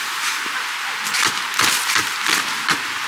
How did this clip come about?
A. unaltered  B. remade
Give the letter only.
A